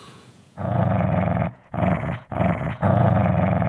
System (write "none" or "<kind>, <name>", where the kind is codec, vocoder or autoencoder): vocoder, Vocos